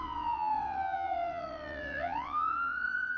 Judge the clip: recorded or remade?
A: remade